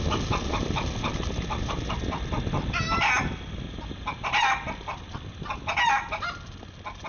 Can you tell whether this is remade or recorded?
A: recorded